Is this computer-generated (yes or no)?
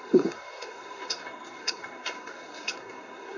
yes